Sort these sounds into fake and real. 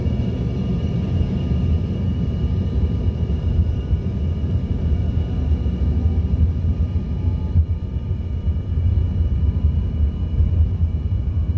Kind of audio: fake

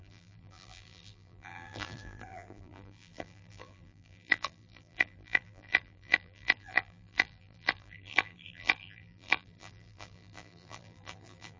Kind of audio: fake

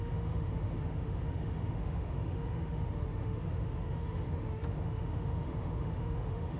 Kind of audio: fake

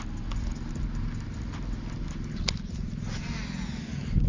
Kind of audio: real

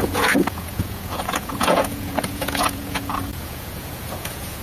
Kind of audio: fake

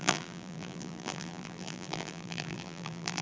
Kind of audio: fake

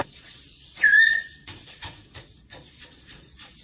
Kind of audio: fake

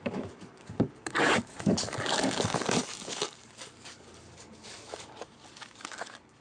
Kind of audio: fake